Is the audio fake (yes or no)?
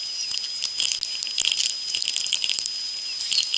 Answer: no